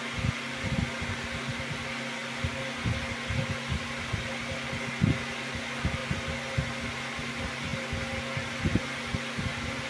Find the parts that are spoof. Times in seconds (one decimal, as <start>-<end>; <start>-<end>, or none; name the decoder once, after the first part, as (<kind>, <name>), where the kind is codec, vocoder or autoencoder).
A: none